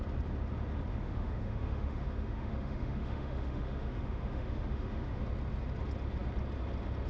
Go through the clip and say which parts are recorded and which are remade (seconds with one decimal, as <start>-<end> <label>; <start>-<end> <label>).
0.0-0.9 recorded; 0.9-5.2 remade; 5.2-7.1 recorded